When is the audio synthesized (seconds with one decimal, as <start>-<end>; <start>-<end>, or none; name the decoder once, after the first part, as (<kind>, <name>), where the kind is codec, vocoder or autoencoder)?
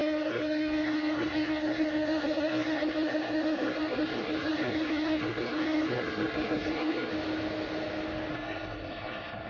0.0-7.1 (codec, SNAC); 8.3-9.5